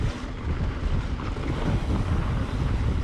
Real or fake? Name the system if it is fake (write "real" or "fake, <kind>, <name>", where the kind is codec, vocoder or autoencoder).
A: real